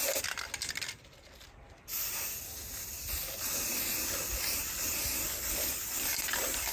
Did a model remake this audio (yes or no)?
no